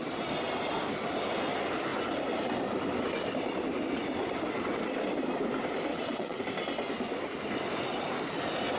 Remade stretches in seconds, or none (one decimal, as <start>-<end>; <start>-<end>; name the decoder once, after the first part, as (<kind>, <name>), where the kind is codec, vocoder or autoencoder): 5.9-6.4 (vocoder, WaveNeXt)